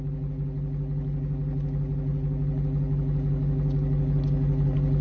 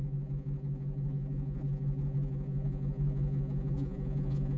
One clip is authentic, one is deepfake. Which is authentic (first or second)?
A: first